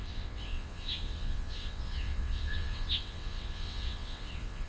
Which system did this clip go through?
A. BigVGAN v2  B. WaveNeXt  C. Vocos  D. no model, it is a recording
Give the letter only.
B